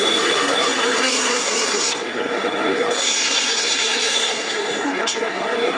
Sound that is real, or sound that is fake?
fake